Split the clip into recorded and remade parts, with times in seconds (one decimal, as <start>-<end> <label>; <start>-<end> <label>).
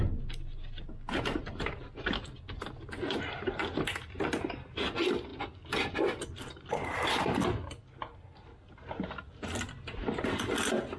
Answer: 0.0-11.0 recorded